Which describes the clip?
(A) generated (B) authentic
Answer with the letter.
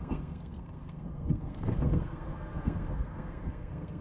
A